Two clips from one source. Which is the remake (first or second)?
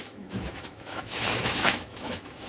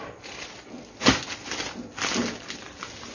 first